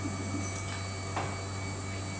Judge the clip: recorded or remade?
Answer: recorded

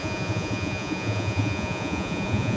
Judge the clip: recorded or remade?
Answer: remade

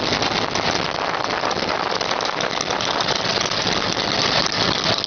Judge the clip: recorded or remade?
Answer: recorded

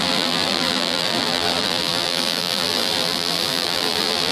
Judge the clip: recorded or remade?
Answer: remade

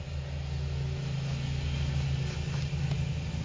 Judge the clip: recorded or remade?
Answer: recorded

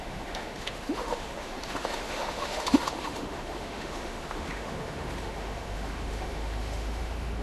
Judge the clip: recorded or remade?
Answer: remade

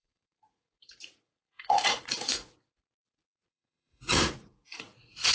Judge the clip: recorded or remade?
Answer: remade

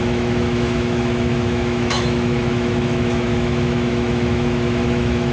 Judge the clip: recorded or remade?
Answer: remade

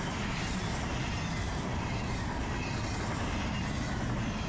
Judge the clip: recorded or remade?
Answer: recorded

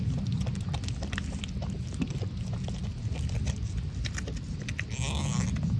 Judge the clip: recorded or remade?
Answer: recorded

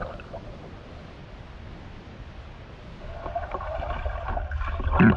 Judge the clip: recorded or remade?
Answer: recorded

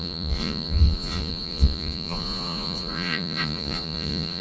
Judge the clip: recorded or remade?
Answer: remade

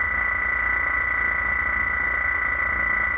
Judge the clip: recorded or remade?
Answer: recorded